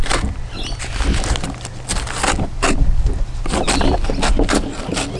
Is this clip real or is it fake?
real